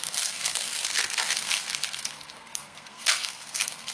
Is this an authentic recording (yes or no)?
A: no